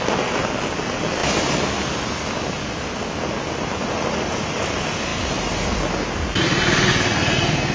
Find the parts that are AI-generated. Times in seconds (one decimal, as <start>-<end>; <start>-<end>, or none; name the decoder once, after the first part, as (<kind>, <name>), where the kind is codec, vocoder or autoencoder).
none